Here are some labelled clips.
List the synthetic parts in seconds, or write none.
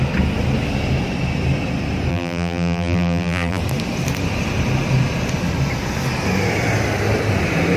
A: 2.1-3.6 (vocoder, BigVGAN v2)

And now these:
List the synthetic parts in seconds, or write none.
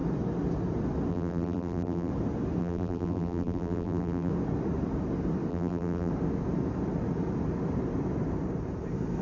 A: 1.1-2.1 (vocoder, BigVGAN v2); 2.6-4.3; 5.5-6.1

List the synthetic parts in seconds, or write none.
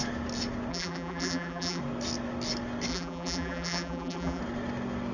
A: 0.7-1.8 (vocoder, BigVGAN v2); 2.9-4.4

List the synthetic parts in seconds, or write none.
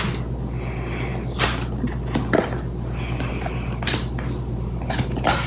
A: none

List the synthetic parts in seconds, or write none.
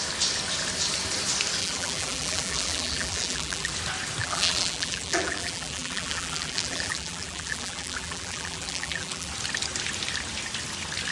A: 1.6-3.7 (vocoder, BigVGAN v2); 4.2-9.3